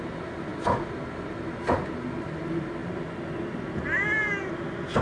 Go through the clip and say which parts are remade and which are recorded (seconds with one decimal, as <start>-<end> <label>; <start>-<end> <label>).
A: 0.0-5.0 recorded